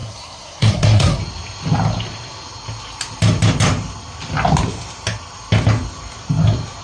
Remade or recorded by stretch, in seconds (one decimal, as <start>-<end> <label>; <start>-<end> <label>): 0.0-1.2 remade; 1.2-6.8 recorded